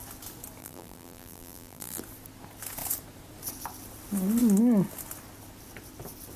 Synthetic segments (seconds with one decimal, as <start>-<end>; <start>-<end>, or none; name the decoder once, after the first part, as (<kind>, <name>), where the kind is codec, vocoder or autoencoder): 0.6-2.0 (vocoder, BigVGAN v2)